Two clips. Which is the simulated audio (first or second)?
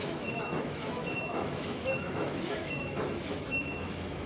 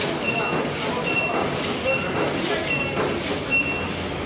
first